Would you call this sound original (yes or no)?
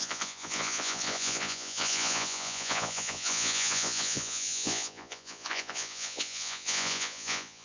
no